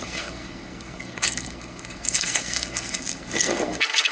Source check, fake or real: fake